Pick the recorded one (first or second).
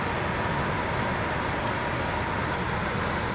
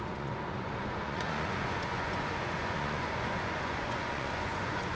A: first